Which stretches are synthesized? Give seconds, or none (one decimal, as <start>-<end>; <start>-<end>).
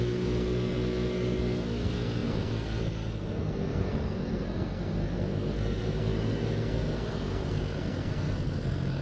0.0-9.0